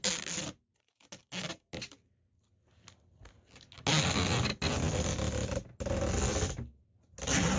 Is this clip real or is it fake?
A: real